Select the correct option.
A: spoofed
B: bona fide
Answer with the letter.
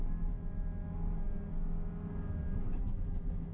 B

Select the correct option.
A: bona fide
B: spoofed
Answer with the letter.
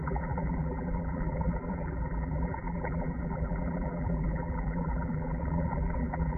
B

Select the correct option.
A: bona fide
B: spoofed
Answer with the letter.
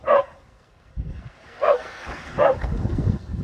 B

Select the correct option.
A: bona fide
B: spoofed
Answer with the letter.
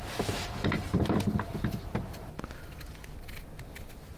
A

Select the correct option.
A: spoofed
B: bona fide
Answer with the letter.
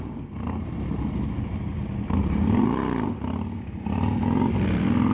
B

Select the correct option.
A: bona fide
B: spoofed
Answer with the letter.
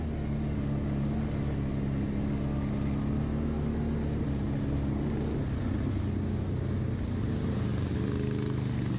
A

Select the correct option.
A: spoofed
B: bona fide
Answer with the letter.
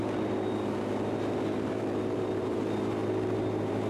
A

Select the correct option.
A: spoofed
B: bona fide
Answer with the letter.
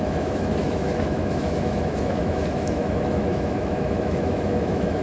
A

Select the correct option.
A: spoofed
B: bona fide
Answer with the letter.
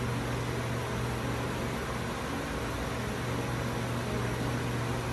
B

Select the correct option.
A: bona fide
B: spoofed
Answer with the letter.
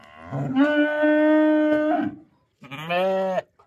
A